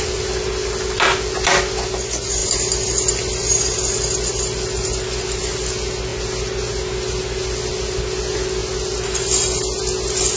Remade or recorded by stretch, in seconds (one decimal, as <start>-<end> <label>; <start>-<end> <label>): 0.0-10.4 recorded